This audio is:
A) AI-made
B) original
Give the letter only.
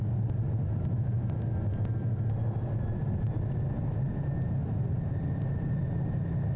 B